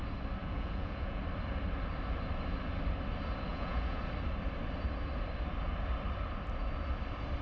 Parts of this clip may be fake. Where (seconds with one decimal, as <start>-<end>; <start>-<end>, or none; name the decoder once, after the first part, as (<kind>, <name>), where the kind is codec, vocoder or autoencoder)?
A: 0.4-1.2 (vocoder, Vocos); 3.5-4.0